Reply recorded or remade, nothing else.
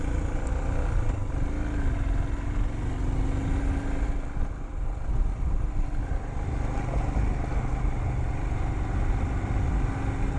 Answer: recorded